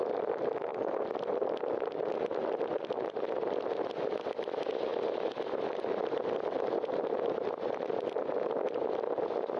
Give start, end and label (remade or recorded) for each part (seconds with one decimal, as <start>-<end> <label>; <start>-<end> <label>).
0.0-0.7 recorded; 0.7-2.1 remade; 2.1-9.6 recorded